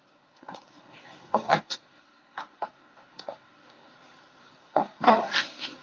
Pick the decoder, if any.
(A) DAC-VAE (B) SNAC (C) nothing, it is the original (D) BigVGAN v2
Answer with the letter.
B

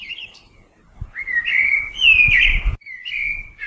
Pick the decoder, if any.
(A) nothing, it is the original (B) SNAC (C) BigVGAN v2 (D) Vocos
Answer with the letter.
A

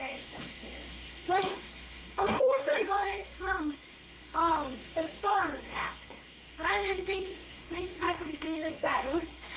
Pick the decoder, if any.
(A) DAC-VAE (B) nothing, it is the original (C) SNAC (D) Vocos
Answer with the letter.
C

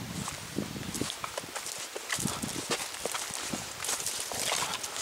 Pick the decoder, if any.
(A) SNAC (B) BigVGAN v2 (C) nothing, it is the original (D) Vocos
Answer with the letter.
C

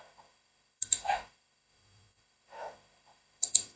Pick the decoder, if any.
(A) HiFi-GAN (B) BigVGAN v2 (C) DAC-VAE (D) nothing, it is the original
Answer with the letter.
C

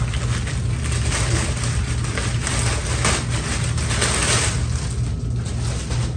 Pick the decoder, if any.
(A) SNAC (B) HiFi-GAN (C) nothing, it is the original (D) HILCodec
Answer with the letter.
C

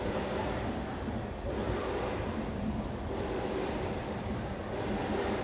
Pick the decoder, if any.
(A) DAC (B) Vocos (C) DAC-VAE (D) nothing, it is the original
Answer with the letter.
D